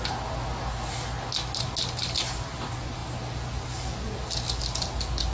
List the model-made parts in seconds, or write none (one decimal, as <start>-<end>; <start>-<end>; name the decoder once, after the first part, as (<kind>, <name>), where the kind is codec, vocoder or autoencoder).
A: none